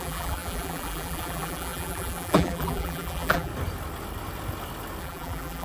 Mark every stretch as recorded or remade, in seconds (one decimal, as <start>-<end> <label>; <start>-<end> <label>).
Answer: 0.0-3.5 remade; 3.5-5.0 recorded; 5.0-5.6 remade